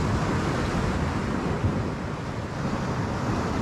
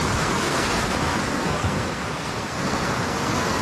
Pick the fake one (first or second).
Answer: second